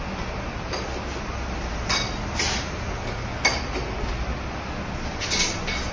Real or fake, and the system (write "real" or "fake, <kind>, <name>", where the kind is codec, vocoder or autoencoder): real